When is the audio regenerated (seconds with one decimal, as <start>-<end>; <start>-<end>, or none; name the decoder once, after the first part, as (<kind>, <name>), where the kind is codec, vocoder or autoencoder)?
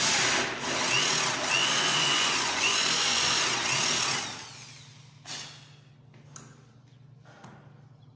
1.6-3.4 (vocoder, Vocos)